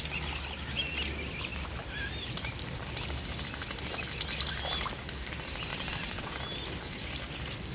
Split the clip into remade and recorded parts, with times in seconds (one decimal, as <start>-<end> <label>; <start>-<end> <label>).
0.0-5.7 recorded; 5.7-6.3 remade; 6.3-7.7 recorded